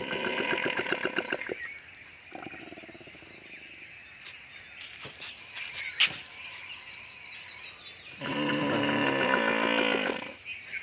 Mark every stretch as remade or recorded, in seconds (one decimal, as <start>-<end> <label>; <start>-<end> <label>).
0.0-10.8 recorded